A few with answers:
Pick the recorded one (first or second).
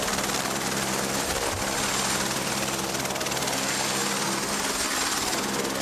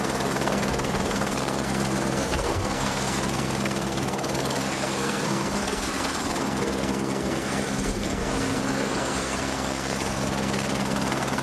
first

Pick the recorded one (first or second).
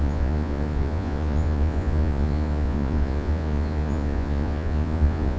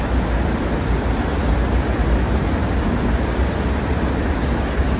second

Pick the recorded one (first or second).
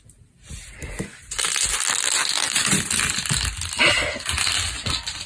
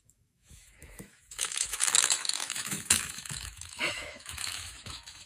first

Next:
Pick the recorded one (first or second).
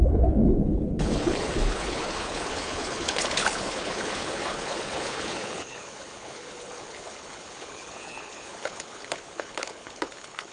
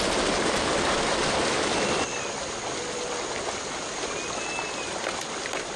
second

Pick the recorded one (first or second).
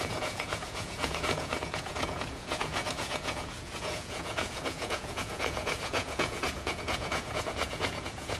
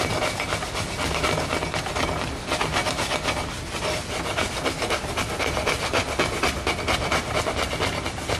second